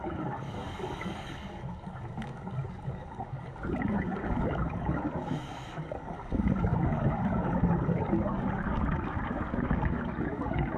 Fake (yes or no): yes